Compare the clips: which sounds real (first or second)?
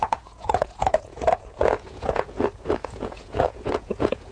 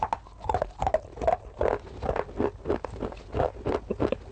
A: second